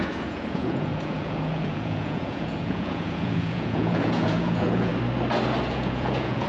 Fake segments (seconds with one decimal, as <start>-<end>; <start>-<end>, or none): 0.0-4.9; 5.7-6.5